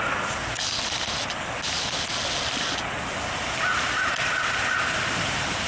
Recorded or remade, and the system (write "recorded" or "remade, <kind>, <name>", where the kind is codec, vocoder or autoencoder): recorded